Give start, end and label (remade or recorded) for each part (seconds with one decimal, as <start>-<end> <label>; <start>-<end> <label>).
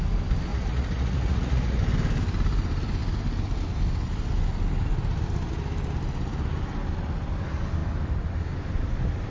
0.0-0.5 recorded; 0.5-1.8 remade; 1.8-9.3 recorded